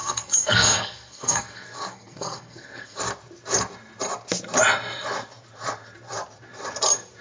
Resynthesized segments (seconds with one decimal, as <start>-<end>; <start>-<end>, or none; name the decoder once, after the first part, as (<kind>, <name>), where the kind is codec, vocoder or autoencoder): 0.0-3.0 (codec, SNAC)